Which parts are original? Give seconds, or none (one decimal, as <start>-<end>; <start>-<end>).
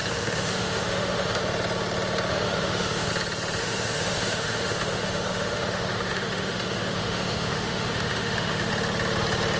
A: 1.4-2.3; 3.1-3.6; 8.7-9.6